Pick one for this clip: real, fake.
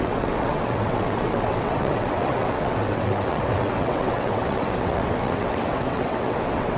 fake